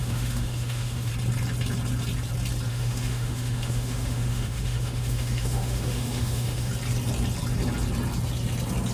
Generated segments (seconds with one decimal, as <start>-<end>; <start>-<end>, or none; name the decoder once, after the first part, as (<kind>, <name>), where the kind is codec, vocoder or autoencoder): 0.0-1.1 (autoencoder, DAC-VAE); 2.7-6.7